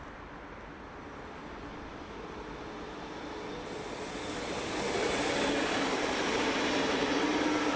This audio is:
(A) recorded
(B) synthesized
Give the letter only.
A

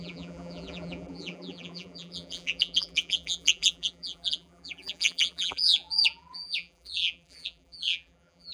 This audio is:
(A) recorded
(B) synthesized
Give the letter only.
B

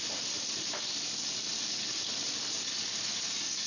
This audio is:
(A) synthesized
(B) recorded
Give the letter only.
B